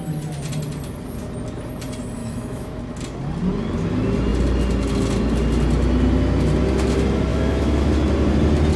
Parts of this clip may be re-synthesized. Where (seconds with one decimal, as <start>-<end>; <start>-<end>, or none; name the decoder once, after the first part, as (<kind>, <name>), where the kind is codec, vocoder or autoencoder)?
2.2-2.8 (autoencoder, DAC-VAE); 7.3-7.9